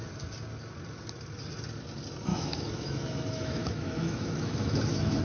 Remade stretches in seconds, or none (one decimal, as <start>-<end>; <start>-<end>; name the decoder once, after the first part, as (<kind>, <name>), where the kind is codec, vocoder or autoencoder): 2.3-5.2 (autoencoder, DAC-VAE)